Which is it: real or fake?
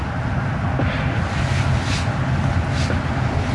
real